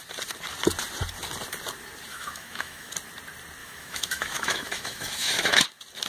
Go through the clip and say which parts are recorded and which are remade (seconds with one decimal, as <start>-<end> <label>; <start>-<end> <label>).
0.0-2.1 recorded; 2.1-2.9 remade; 2.9-3.6 recorded; 3.6-5.6 remade; 5.6-6.1 recorded